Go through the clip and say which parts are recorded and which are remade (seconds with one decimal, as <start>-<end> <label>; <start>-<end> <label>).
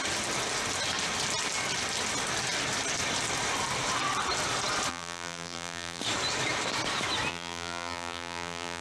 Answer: 0.0-4.9 recorded; 4.9-6.0 remade; 6.0-7.3 recorded; 7.3-8.8 remade